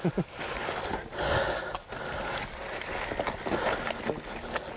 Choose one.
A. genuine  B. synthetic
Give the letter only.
A